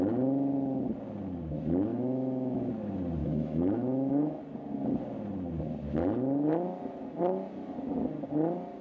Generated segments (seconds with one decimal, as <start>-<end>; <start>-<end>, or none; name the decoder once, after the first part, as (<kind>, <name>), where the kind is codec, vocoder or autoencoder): 1.9-2.7 (autoencoder, DAC-VAE); 3.2-4.4